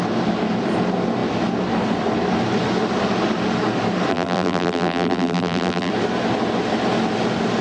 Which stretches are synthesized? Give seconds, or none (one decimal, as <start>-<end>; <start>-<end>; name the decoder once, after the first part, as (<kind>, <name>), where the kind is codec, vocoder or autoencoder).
4.1-5.9 (vocoder, BigVGAN v2)